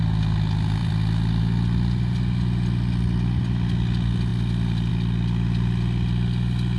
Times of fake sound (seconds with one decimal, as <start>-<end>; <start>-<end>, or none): 0.8-1.4; 4.3-4.9